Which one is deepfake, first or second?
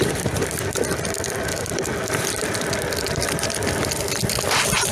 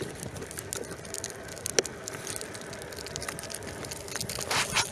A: first